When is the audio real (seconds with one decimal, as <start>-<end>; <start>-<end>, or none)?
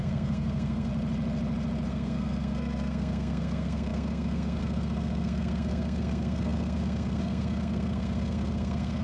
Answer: 0.9-1.9